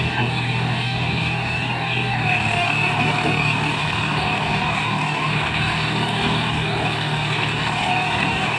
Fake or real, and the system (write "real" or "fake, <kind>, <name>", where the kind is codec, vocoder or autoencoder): fake, codec, DAC